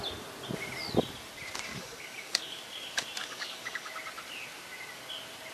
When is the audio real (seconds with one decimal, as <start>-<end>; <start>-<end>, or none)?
0.0-1.7; 2.6-3.2; 3.9-5.5